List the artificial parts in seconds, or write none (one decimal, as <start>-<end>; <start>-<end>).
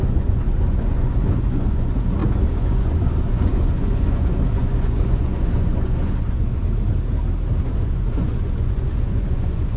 0.0-6.6; 7.6-9.8